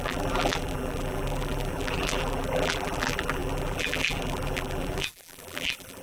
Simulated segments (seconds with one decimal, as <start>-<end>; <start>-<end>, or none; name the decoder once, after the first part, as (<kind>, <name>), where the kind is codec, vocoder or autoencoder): 0.0-6.0 (vocoder, BigVGAN v2)